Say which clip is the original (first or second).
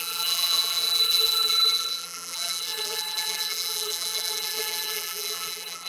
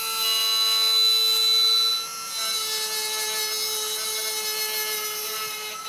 second